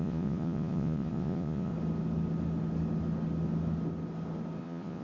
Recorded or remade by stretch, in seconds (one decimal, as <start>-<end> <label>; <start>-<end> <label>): 0.0-1.7 remade; 1.7-4.6 recorded; 4.6-5.0 remade